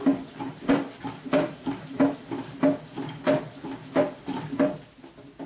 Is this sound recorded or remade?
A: recorded